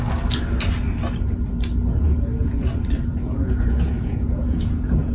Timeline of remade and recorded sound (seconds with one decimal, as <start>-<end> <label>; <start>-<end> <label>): 0.0-3.1 recorded; 3.1-5.1 remade